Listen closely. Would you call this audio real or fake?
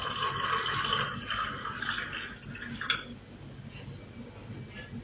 real